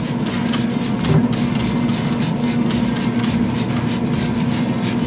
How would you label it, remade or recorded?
recorded